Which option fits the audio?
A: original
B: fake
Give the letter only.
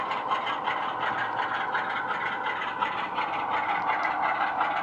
A